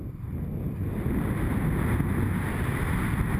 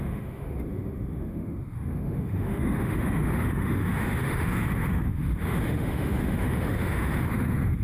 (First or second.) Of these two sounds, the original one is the first